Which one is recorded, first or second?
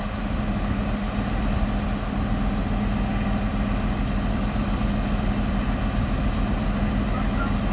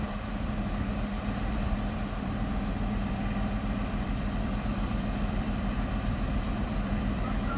first